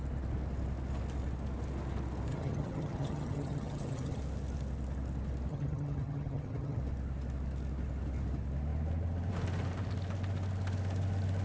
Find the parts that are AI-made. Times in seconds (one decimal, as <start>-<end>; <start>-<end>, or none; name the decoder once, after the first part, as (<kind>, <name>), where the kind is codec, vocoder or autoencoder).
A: 2.3-4.2 (vocoder, HiFi-GAN); 5.5-6.8